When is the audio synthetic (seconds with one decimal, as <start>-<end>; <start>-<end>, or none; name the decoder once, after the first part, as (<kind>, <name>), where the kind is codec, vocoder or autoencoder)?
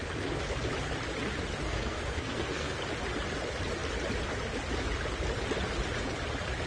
1.6-2.8 (codec, SNAC)